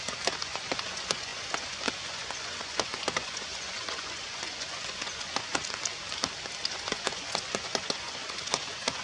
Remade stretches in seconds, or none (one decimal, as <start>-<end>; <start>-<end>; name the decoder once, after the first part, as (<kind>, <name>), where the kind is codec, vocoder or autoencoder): 0.0-5.6 (vocoder, Vocos); 6.7-9.0